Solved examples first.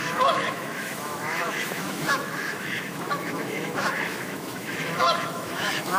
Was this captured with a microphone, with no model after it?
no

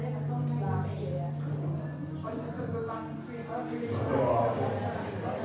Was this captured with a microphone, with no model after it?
yes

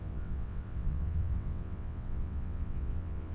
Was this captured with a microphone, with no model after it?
no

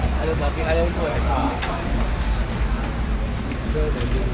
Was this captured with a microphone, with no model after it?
yes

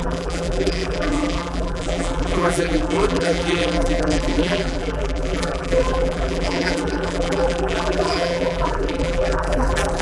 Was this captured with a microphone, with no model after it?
no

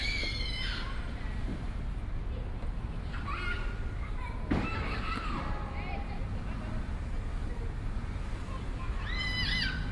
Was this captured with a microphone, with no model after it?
yes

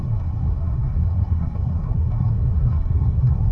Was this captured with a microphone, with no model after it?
no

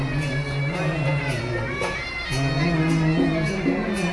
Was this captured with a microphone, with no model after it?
yes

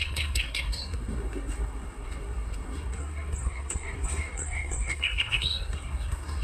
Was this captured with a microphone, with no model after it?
no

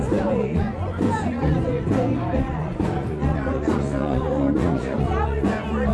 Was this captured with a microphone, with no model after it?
no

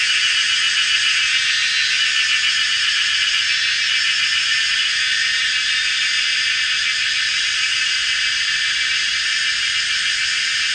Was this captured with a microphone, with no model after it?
yes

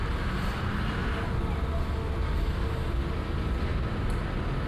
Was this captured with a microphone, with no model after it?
yes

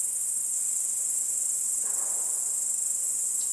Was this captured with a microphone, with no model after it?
yes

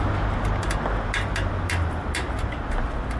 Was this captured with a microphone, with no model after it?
yes